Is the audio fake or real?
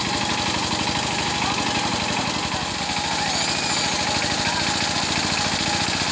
real